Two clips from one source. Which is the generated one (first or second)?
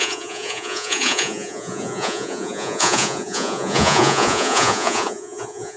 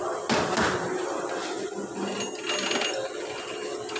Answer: first